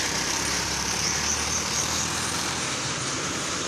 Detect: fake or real fake